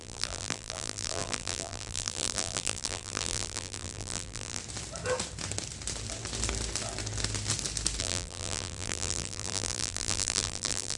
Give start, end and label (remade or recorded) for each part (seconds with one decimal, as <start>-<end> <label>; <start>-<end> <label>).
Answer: 0.0-4.6 remade; 4.6-8.0 recorded; 8.0-11.0 remade